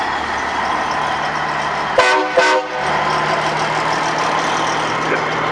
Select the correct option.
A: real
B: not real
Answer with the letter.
A